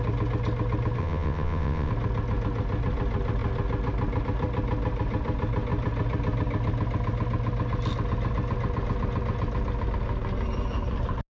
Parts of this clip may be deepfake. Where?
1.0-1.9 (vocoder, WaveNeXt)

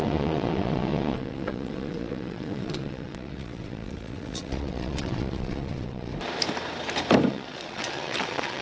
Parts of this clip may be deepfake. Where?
0.0-6.1 (vocoder, WaveNeXt); 7.3-8.6

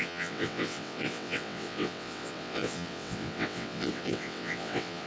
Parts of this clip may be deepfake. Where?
0.0-5.1 (vocoder, WaveNeXt)

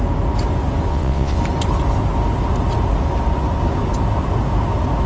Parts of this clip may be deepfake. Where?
0.9-1.4 (vocoder, WaveNeXt)

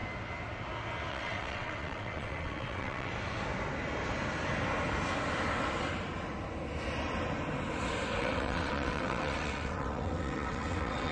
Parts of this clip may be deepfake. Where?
1.1-3.1 (vocoder, WaveNeXt); 8.2-11.1